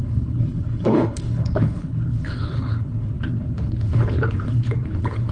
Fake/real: fake